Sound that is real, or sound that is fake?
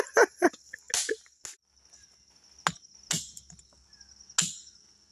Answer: real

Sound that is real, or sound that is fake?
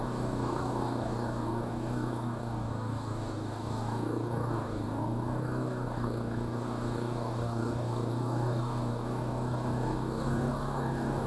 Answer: fake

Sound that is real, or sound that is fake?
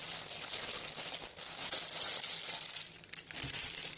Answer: real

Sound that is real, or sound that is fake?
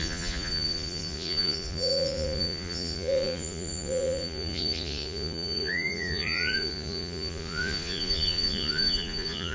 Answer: fake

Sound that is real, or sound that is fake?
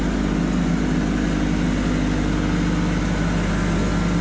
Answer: real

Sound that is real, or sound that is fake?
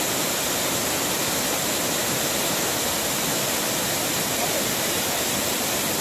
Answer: real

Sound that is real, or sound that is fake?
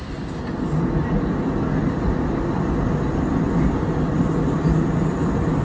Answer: real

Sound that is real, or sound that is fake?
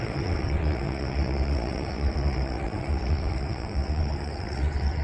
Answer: fake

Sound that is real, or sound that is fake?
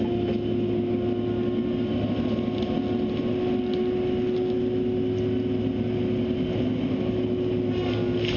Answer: real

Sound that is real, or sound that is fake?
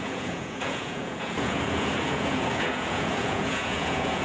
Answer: fake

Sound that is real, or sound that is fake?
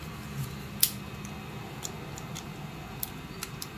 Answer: real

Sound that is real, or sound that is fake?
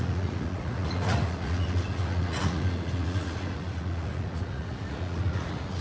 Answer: fake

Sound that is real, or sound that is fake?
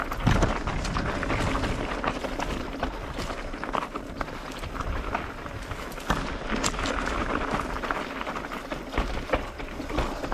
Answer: real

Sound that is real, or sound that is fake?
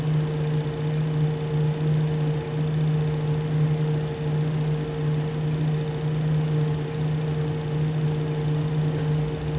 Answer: real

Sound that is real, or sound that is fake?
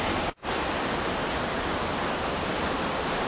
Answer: real